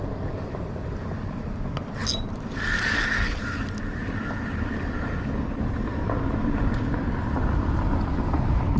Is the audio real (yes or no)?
yes